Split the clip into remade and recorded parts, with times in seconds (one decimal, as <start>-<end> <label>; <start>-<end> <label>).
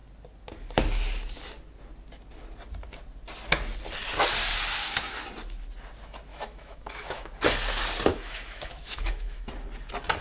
0.0-6.3 recorded; 6.3-7.3 remade; 7.3-8.1 recorded; 8.1-9.5 remade; 9.5-10.2 recorded